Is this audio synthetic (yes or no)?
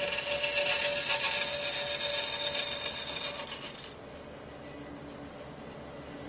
no